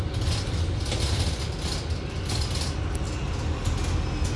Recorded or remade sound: recorded